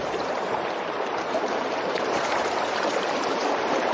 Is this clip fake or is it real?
fake